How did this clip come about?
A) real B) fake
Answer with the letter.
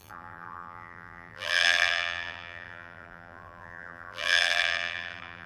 B